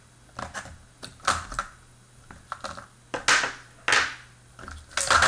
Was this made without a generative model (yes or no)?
yes